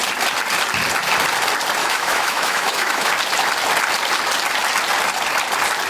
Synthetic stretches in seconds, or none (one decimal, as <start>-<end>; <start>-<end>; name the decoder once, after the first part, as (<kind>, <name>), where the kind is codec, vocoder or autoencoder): 1.8-3.1 (autoencoder, DAC-VAE)